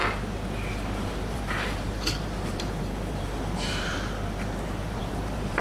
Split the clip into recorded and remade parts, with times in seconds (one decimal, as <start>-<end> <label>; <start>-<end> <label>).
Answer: 0.0-0.7 recorded; 0.7-5.6 remade